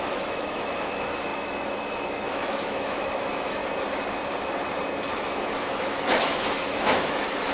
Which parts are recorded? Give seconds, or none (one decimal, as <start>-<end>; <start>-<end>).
3.6-5.1